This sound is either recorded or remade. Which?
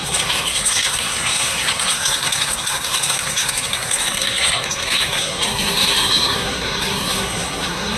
remade